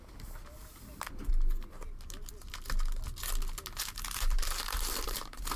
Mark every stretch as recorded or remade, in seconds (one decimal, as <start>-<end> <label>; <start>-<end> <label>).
0.0-0.4 remade; 0.4-3.8 recorded; 3.8-5.6 remade